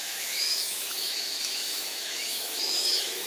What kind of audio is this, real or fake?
fake